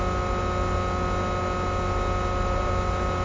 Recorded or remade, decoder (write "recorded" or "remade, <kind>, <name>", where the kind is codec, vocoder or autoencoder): recorded